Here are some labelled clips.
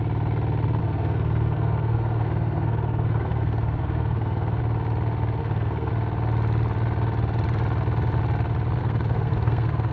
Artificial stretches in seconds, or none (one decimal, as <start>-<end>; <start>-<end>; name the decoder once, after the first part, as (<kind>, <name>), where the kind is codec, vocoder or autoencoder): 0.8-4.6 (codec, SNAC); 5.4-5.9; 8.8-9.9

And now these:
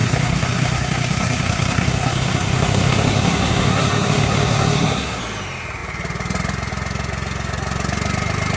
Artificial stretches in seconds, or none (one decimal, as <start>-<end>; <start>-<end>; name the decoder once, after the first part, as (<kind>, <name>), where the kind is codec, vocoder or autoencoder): 0.0-5.2 (codec, SNAC)

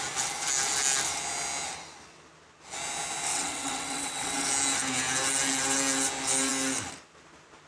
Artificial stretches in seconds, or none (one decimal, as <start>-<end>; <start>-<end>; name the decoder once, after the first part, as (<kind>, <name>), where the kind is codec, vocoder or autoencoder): 3.3-4.5 (vocoder, WaveNeXt)